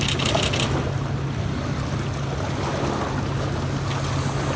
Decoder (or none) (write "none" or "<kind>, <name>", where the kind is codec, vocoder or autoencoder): none